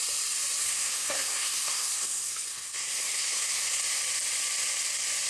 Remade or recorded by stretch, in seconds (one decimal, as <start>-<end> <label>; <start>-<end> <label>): 0.0-0.6 recorded; 0.6-3.8 remade; 3.8-5.3 recorded